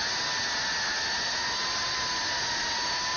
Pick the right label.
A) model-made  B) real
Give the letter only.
B